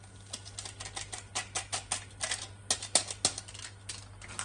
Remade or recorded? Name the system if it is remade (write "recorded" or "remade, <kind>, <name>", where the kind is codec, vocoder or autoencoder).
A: recorded